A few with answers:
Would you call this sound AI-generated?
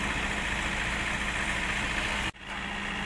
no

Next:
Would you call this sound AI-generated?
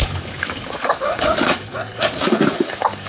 yes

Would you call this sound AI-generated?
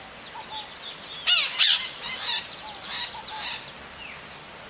no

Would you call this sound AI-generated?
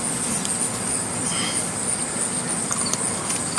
no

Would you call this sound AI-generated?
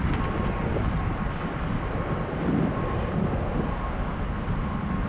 no